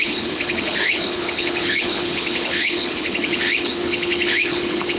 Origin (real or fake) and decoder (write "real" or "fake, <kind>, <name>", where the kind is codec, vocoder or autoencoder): fake, codec, HILCodec